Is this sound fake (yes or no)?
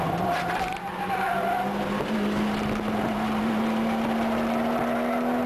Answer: no